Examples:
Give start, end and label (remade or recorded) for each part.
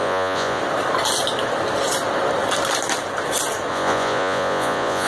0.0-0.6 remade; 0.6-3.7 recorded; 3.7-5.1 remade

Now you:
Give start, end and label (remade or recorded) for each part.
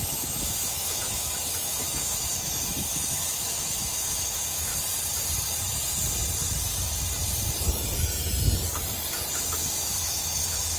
0.0-4.7 remade; 4.7-9.5 recorded; 9.5-10.8 remade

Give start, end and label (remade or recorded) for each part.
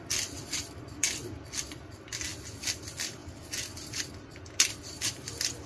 0.0-2.3 remade; 2.3-2.8 recorded; 2.8-3.2 remade; 3.2-4.2 recorded; 4.2-5.7 remade